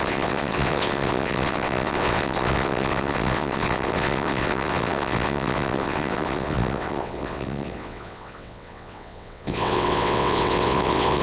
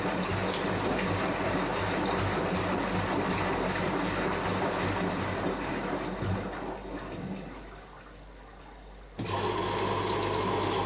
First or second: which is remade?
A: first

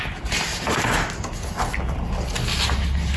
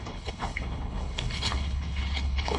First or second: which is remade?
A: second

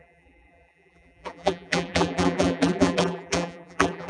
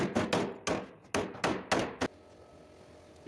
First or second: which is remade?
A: first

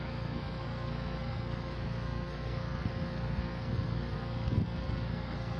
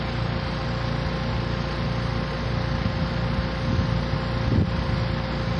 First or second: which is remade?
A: first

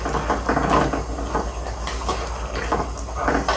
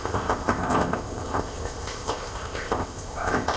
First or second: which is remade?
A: second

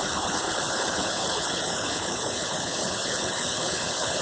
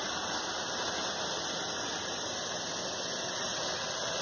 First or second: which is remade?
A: first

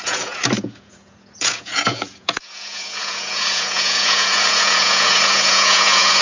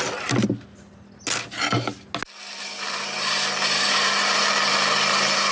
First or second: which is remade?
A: first